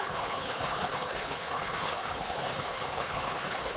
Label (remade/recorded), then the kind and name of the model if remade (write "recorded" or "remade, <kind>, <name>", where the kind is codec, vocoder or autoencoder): remade, codec, HILCodec